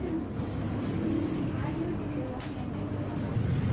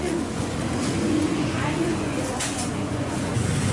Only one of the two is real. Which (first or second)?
first